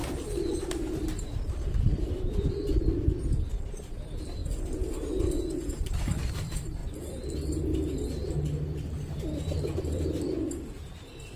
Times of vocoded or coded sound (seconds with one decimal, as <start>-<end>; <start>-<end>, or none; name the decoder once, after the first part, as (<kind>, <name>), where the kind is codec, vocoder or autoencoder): 0.0-4.4 (vocoder, BigVGAN v2); 6.3-6.8; 9.8-11.4